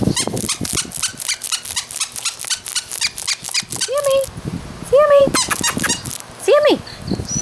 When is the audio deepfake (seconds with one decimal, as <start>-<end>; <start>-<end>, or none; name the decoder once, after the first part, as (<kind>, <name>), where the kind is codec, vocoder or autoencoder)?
none

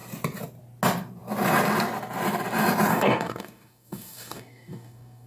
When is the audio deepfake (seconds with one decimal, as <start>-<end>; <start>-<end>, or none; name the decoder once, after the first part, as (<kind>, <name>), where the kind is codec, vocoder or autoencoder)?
2.9-5.3 (codec, DAC)

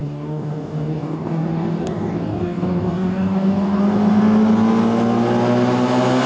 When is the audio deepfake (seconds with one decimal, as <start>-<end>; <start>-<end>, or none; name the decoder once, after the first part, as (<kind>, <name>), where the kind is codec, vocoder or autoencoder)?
0.0-3.8 (codec, DAC)

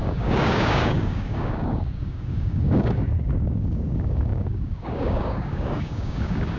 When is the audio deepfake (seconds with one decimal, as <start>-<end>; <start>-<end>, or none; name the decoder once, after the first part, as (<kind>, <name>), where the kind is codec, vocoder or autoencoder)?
0.0-6.6 (codec, DAC)

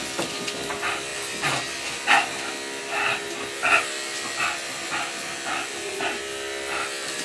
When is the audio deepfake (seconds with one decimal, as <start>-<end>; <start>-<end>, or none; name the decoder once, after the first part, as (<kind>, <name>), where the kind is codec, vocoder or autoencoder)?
none